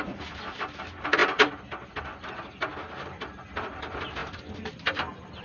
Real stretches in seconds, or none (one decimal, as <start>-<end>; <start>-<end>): 0.0-5.4